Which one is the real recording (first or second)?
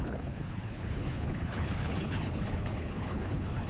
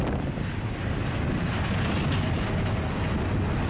second